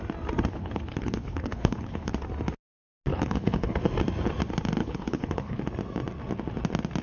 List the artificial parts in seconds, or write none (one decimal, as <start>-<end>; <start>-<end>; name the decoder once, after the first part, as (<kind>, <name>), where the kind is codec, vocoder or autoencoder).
0.5-2.1 (codec, HILCodec); 3.1-3.8; 4.8-5.6